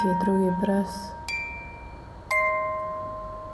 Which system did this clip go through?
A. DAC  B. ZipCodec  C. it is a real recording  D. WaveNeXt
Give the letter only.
C